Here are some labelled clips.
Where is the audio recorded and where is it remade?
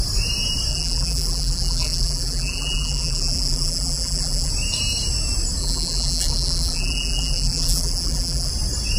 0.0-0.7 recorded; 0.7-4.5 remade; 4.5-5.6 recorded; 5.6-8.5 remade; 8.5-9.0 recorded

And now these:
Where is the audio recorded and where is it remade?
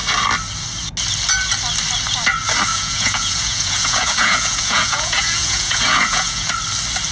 0.0-2.7 recorded; 2.7-6.5 remade; 6.5-7.1 recorded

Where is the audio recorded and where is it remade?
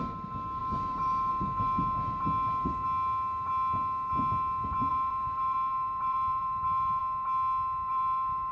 0.0-0.6 recorded; 0.6-1.3 remade; 1.3-4.9 recorded; 4.9-7.0 remade; 7.0-7.9 recorded; 7.9-8.5 remade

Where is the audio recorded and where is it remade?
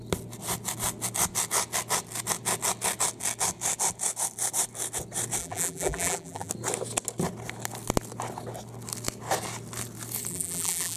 0.0-5.4 recorded; 5.4-6.5 remade; 6.5-10.3 recorded; 10.3-11.0 remade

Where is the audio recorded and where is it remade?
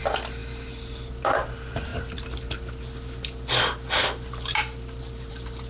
0.0-5.7 recorded